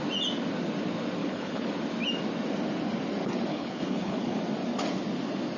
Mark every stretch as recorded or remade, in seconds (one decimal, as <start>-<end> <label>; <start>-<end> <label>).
0.0-1.2 recorded; 1.2-1.7 remade; 1.7-3.5 recorded; 3.5-4.4 remade; 4.4-5.6 recorded